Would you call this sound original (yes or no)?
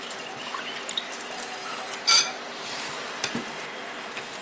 no